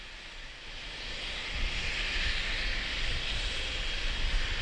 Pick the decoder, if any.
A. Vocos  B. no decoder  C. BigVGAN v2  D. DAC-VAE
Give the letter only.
B